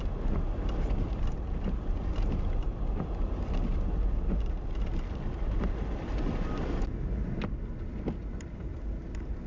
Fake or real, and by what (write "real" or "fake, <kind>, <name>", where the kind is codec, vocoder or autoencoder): real